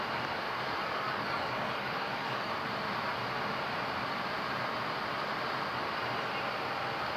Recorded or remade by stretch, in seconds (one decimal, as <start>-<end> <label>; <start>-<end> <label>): 0.0-0.8 recorded; 0.8-2.5 remade; 2.5-7.2 recorded